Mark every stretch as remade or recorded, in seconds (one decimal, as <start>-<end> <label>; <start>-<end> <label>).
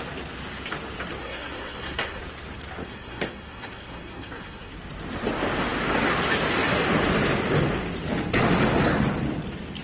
0.0-1.2 recorded; 1.2-2.2 remade; 2.2-2.8 recorded; 2.8-4.7 remade; 4.7-9.8 recorded